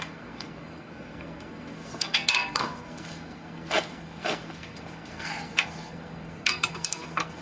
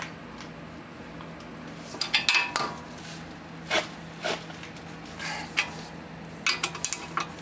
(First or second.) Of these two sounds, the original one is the second